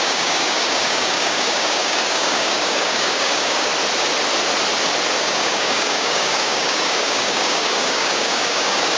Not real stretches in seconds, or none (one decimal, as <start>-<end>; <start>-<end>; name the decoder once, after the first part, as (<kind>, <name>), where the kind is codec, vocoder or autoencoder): 0.0-3.7 (codec, DAC); 5.2-9.0